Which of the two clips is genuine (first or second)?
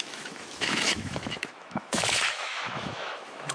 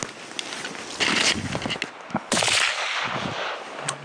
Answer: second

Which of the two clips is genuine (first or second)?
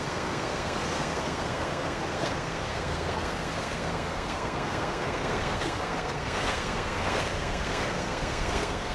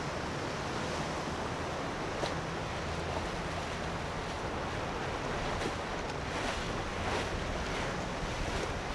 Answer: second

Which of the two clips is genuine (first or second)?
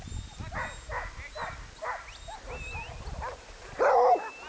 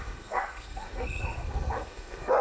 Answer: first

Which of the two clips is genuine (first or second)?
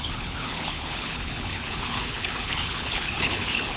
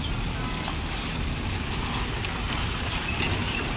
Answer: second